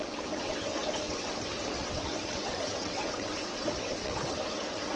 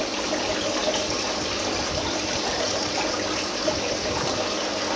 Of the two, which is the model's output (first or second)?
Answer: first